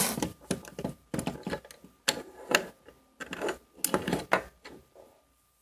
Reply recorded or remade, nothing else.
recorded